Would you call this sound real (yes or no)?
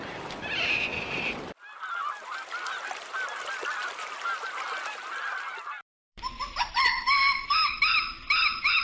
no